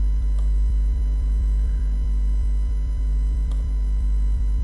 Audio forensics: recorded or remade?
remade